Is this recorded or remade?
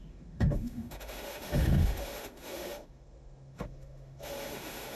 remade